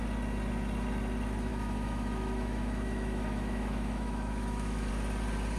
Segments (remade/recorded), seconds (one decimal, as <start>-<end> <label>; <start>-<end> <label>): 0.0-1.5 recorded; 1.5-4.9 remade; 4.9-5.6 recorded